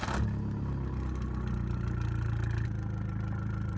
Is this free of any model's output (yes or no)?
yes